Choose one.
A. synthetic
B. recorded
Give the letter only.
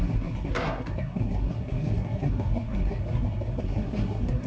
A